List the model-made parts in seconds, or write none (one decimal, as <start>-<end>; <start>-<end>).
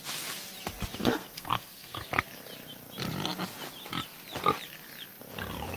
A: 1.0-2.0